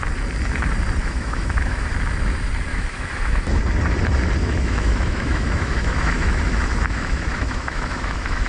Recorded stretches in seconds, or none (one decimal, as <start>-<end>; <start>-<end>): 0.0-1.0; 1.9-2.7; 3.6-4.4